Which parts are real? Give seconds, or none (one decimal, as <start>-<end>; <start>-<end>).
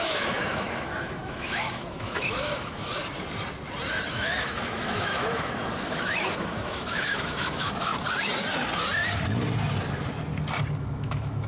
3.0-4.1; 7.9-10.8